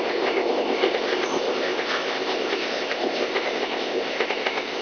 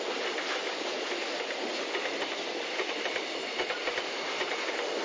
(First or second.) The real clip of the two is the second